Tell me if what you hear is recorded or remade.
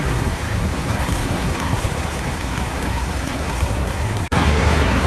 remade